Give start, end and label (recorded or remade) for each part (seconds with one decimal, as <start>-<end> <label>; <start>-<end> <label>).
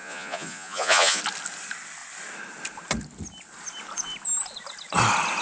0.0-1.2 remade; 1.2-5.4 recorded